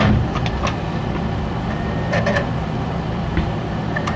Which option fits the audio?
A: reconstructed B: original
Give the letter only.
B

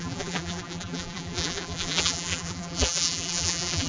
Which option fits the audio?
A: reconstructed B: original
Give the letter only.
A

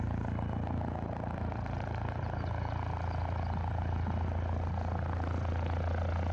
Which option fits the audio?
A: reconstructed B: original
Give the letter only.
B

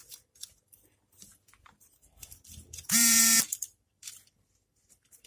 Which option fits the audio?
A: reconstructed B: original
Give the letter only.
A